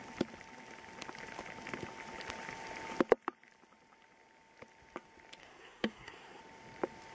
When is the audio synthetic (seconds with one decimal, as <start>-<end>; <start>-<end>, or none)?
5.4-6.4